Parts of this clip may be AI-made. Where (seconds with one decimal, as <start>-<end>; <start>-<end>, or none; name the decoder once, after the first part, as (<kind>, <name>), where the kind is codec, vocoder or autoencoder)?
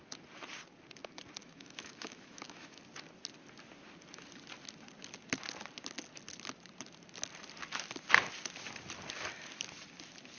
1.4-2.8 (autoencoder, DAC-VAE)